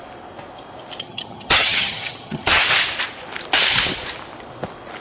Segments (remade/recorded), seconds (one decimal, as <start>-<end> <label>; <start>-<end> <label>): 0.0-1.0 recorded; 1.0-2.6 remade; 2.6-5.0 recorded